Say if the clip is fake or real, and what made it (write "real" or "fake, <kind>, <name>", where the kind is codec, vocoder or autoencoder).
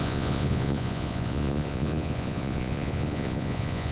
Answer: fake, vocoder, Vocos